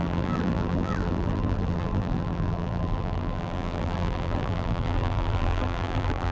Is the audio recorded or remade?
remade